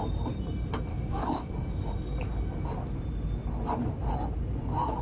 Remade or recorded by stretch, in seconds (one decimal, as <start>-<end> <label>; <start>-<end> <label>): 0.0-0.9 recorded; 0.9-1.5 remade; 1.5-5.0 recorded